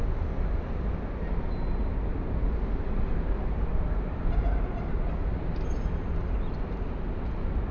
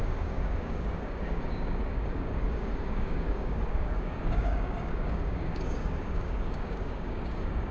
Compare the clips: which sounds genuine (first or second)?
first